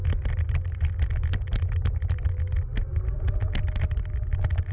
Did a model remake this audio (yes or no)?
no